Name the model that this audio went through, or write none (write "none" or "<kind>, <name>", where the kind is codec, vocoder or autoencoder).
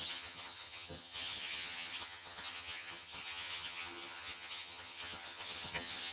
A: vocoder, HiFi-GAN